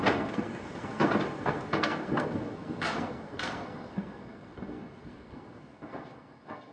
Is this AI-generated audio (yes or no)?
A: yes